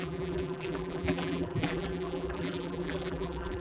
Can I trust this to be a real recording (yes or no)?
no